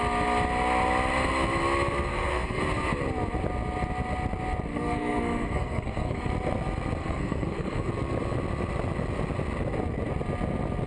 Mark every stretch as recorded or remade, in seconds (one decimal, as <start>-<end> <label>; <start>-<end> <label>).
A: 0.0-2.1 recorded; 2.1-2.6 remade; 2.6-4.7 recorded; 4.7-6.3 remade; 6.3-7.0 recorded; 7.0-7.9 remade; 7.9-10.9 recorded